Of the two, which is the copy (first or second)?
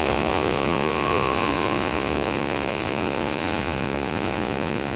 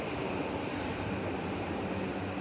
first